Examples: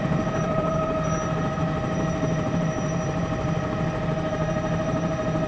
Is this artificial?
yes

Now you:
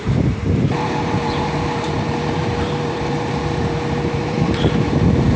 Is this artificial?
yes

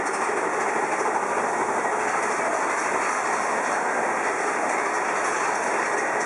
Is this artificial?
no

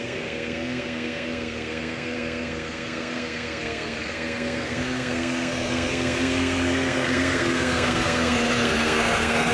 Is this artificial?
yes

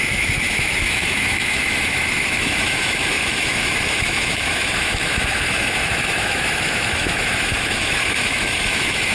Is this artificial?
yes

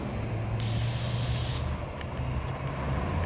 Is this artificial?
no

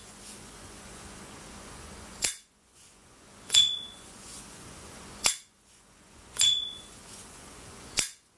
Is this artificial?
yes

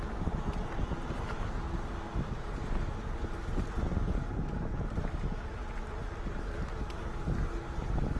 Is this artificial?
no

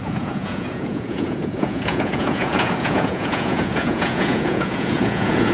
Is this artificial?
yes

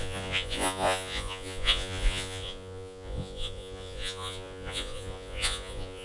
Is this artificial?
yes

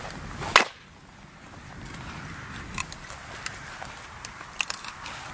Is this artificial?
no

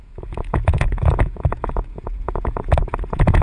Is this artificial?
yes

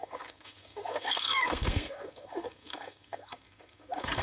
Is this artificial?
yes